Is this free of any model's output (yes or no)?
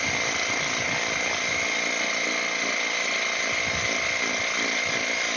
yes